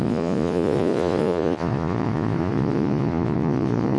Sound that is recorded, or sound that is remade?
remade